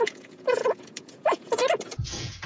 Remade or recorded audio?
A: remade